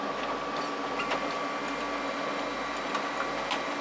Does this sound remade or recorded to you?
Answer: recorded